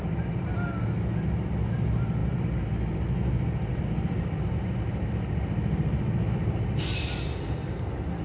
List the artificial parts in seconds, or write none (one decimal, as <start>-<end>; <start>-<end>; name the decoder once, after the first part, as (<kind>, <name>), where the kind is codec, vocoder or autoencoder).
none